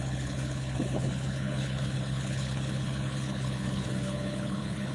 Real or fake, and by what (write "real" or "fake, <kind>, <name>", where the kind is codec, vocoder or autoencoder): fake, codec, HILCodec